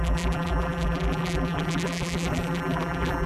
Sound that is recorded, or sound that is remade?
remade